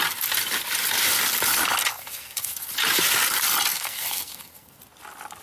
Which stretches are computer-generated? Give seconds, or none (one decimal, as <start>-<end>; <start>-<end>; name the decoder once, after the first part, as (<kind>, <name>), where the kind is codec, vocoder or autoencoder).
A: 1.9-2.7 (codec, SNAC); 3.7-4.8